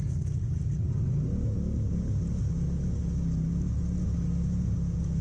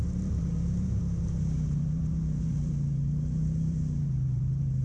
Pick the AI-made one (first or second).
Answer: second